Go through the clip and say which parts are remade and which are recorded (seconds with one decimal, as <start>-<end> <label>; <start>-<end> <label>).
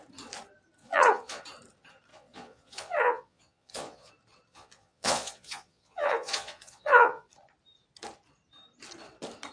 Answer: 0.0-0.8 recorded; 0.8-1.4 remade; 1.4-2.1 recorded; 2.1-4.1 remade; 4.1-4.5 recorded; 4.5-7.3 remade; 7.3-9.5 recorded